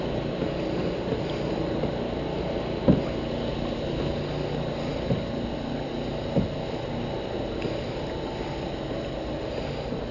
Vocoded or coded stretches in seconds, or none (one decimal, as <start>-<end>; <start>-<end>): none

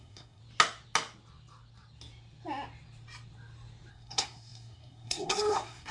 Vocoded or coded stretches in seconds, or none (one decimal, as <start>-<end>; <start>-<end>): 0.0-0.4; 3.9-5.9

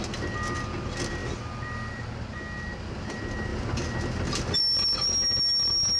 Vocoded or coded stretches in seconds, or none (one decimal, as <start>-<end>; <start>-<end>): none